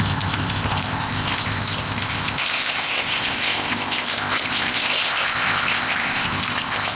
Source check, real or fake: fake